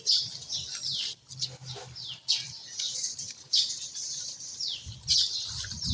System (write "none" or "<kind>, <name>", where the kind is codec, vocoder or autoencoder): none